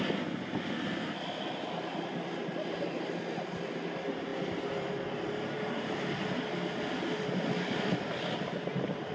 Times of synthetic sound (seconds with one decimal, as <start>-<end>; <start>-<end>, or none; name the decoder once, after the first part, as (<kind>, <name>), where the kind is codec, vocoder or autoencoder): none